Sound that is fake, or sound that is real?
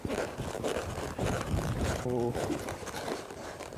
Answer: fake